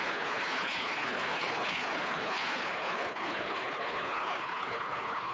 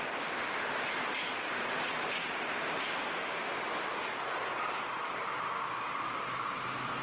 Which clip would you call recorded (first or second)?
second